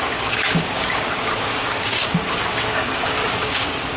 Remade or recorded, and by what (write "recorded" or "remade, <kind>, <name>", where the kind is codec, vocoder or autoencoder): remade, codec, DAC